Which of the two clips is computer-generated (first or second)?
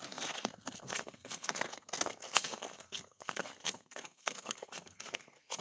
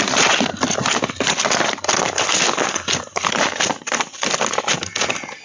first